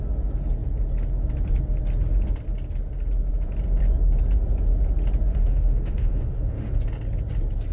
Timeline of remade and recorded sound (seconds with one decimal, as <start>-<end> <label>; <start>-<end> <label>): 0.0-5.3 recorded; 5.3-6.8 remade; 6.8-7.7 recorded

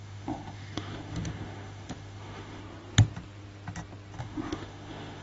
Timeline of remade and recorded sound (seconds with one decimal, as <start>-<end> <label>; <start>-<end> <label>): 0.0-2.6 remade; 2.6-4.2 recorded; 4.2-5.2 remade

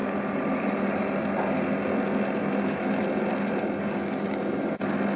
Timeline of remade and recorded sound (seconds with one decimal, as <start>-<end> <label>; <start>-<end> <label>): 0.0-2.4 recorded; 2.4-3.0 remade; 3.0-5.2 recorded

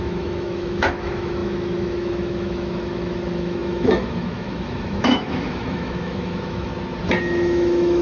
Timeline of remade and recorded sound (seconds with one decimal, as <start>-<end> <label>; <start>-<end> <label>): 0.0-6.7 remade; 6.7-7.2 recorded; 7.2-8.0 remade